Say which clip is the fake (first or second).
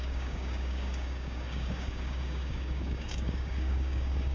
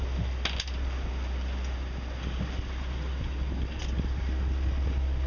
first